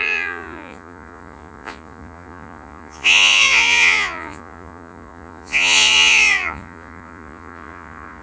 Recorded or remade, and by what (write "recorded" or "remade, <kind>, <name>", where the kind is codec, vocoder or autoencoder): remade, vocoder, Vocos